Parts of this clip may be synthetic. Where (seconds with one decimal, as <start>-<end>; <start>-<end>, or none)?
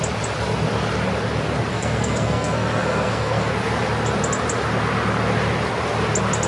1.7-3.5